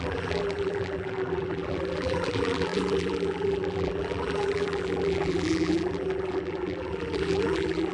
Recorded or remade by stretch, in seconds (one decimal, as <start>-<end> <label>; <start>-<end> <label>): 0.0-7.9 remade